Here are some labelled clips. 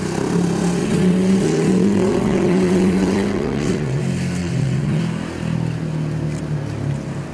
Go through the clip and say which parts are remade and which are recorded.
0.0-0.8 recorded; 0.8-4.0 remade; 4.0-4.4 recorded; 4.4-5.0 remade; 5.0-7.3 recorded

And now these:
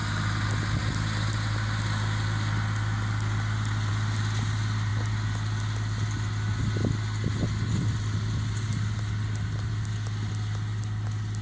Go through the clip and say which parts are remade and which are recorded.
0.0-11.4 recorded

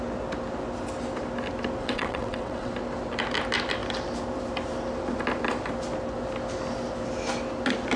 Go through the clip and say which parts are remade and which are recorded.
0.0-1.8 recorded; 1.8-2.7 remade; 2.7-8.0 recorded

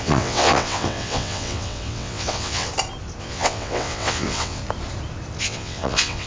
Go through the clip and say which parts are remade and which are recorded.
0.0-2.7 remade; 2.7-3.2 recorded; 3.2-4.6 remade; 4.6-5.4 recorded; 5.4-6.3 remade